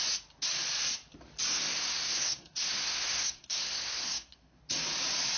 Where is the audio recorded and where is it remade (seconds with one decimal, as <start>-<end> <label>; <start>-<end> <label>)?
0.0-1.5 recorded; 1.5-4.6 remade; 4.6-5.4 recorded